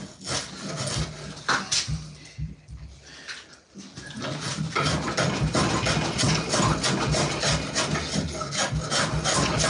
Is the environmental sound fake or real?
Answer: real